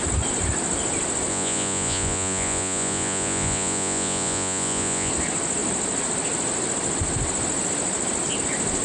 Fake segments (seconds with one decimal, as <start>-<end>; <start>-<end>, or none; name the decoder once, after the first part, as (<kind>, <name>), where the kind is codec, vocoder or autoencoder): 1.3-5.1 (vocoder, Vocos)